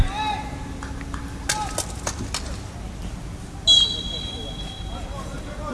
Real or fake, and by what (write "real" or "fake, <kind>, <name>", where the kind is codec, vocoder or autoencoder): real